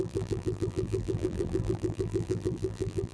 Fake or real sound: fake